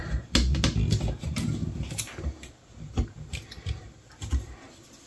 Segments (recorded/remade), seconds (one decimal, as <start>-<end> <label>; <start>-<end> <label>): 0.0-5.1 recorded